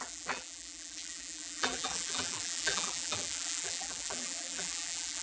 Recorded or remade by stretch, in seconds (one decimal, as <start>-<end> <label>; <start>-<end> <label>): 0.0-5.2 remade